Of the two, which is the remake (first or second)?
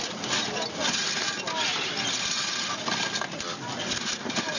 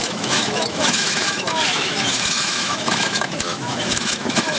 second